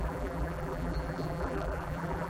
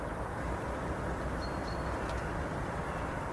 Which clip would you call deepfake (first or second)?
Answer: first